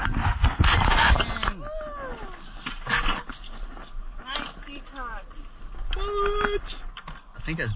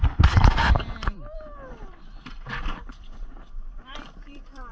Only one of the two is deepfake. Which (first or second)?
second